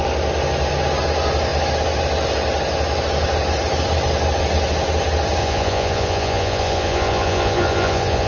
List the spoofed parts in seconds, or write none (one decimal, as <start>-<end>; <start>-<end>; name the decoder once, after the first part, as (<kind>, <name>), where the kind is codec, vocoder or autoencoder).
5.4-8.3 (vocoder, Vocos)